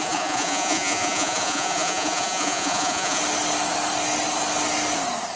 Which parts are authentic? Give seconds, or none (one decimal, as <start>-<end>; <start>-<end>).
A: 3.2-5.4